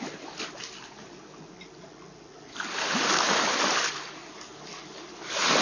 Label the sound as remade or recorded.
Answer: recorded